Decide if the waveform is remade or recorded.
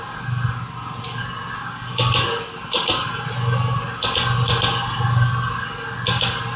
recorded